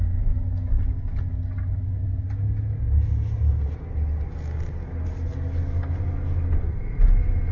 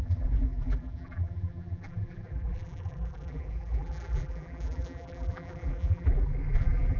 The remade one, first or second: second